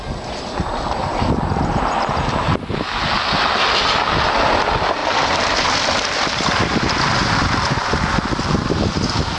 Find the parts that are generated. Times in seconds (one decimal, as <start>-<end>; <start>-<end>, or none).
5.0-6.8